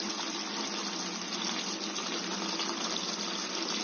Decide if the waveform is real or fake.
real